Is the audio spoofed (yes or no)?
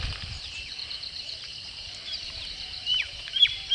yes